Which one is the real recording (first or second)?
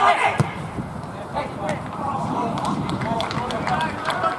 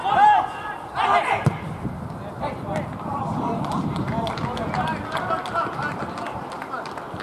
second